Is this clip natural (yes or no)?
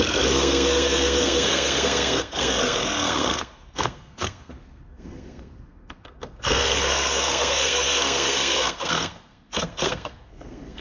no